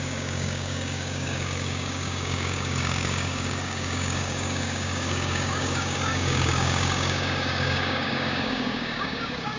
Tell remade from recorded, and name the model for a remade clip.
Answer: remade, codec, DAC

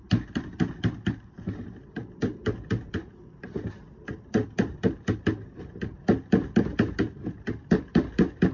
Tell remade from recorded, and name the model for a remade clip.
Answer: recorded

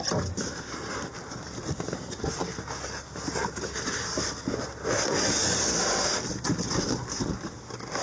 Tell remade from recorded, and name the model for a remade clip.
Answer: recorded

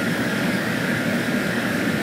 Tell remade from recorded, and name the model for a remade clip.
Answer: remade, codec, DAC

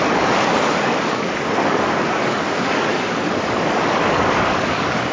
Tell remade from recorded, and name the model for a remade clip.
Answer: remade, codec, DAC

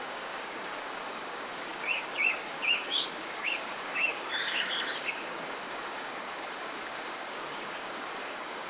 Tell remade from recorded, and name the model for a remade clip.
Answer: remade, codec, DAC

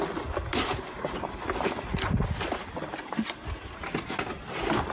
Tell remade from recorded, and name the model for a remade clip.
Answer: recorded